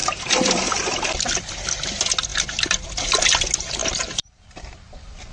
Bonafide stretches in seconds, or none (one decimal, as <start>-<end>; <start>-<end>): 1.6-3.8